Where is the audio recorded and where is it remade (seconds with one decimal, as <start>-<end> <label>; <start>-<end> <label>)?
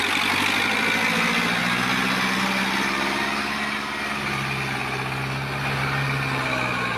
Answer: 0.0-7.0 recorded